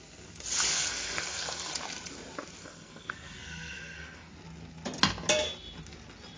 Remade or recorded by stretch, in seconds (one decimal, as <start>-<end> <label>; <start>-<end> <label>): 0.0-0.7 recorded; 0.7-1.7 remade; 1.7-2.6 recorded; 2.6-4.3 remade; 4.3-6.4 recorded